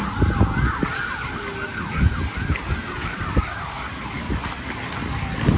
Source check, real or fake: real